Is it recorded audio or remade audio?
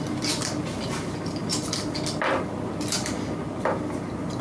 recorded